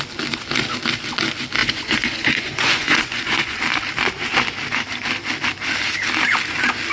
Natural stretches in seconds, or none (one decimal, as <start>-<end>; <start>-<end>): 0.0-1.6; 3.6-6.9